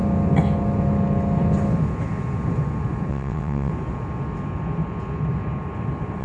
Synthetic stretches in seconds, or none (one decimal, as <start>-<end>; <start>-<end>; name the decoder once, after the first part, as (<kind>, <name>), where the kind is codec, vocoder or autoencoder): 3.1-3.7 (vocoder, WaveNeXt)